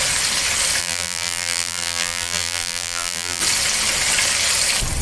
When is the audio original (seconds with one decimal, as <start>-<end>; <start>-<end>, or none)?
0.0-0.8; 3.4-5.0